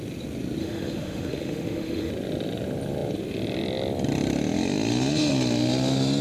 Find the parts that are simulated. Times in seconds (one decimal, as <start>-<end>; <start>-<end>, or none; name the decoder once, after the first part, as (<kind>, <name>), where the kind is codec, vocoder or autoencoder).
0.6-2.1 (autoencoder, DAC-VAE)